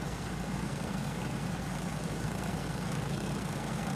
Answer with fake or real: fake